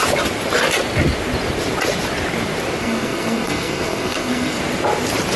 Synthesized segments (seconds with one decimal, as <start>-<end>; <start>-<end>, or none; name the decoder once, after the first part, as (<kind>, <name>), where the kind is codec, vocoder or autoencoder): 2.8-4.6 (codec, SNAC)